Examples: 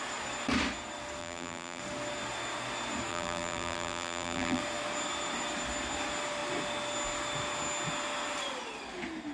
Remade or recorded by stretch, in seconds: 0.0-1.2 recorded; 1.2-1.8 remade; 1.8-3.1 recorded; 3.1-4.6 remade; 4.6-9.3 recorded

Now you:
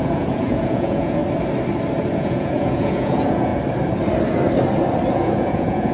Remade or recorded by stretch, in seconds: 0.0-1.2 remade; 1.2-2.1 recorded; 2.1-3.5 remade; 3.5-5.1 recorded; 5.1-5.9 remade